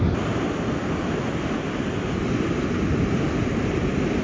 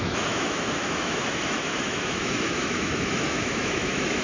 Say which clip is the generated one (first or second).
second